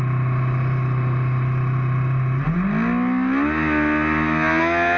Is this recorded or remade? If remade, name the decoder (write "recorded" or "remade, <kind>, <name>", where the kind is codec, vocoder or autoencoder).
recorded